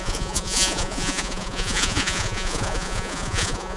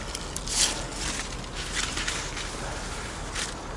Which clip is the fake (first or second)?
first